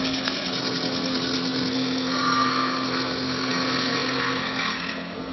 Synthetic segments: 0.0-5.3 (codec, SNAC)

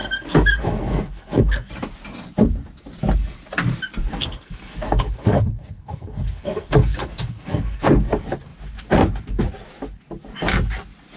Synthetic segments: 0.0-1.7 (codec, SNAC); 4.0-8.0